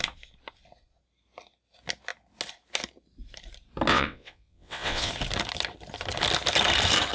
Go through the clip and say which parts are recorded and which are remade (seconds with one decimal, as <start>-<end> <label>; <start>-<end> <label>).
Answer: 0.0-3.9 recorded; 3.9-5.1 remade; 5.1-7.1 recorded